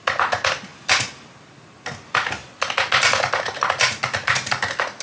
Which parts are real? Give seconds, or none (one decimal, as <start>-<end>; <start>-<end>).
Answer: 0.0-5.0